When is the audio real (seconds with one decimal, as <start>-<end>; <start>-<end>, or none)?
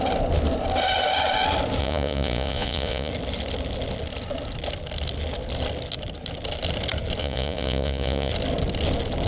0.0-1.8; 3.1-7.2; 8.3-9.3